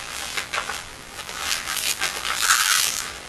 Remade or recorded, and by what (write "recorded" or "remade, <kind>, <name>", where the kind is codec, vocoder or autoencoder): remade, vocoder, BigVGAN v2